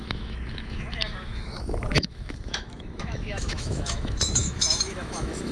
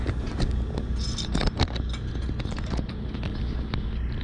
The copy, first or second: first